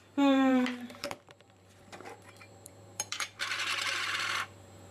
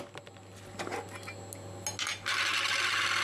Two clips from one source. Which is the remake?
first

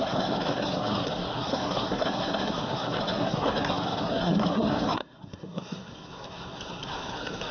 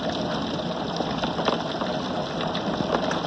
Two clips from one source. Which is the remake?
first